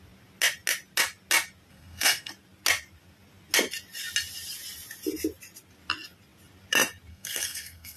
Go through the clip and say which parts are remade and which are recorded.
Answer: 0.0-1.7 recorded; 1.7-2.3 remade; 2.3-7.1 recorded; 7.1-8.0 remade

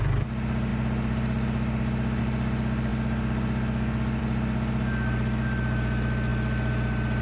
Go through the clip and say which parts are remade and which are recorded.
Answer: 0.0-7.2 recorded

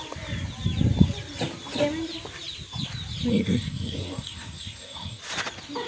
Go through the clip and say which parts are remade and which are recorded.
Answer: 0.0-3.3 recorded; 3.3-5.2 remade; 5.2-5.9 recorded